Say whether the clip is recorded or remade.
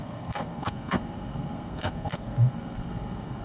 remade